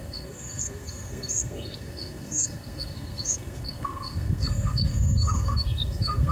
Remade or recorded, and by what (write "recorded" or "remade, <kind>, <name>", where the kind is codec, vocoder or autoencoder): remade, codec, SNAC